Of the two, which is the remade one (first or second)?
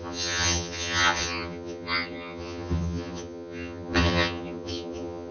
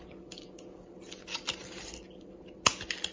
first